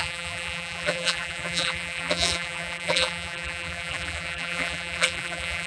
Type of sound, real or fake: fake